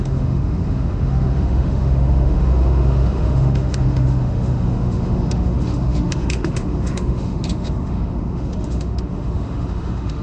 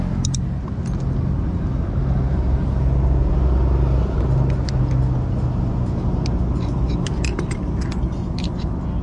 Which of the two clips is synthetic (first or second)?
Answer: first